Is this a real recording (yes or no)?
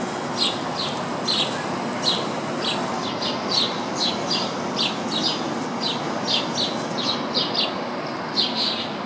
yes